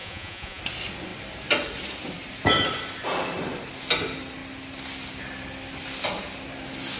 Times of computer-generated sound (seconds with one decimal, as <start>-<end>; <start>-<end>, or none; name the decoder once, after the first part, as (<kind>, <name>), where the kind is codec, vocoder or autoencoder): 0.0-0.6 (vocoder, Vocos)